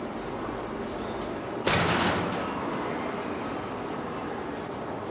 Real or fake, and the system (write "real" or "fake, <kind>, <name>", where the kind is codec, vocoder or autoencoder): real